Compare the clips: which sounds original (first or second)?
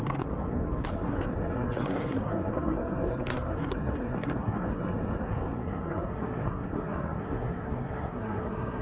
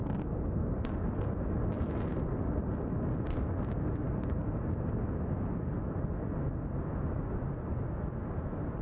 second